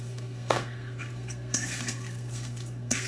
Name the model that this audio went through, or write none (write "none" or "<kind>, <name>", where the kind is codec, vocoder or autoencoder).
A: codec, SNAC